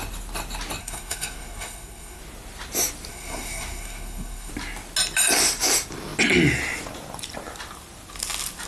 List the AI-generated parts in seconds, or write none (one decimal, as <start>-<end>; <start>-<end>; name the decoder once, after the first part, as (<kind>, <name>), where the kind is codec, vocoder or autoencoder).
0.8-2.2 (codec, SNAC); 3.1-4.5